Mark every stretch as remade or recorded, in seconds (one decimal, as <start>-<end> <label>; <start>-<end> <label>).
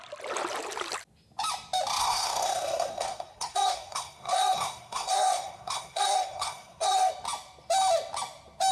0.0-2.0 recorded; 2.0-7.1 remade; 7.1-8.7 recorded